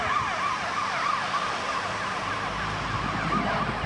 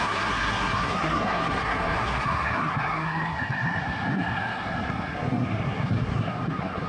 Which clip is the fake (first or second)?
second